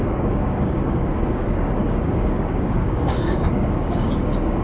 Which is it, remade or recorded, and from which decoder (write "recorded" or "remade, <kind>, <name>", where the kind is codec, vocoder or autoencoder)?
remade, codec, DAC